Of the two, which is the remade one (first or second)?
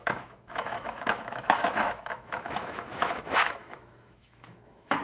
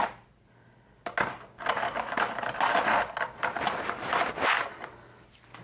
first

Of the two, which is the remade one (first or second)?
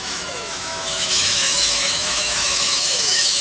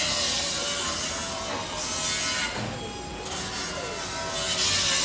first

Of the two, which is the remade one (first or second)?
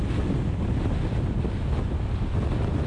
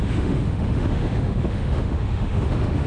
second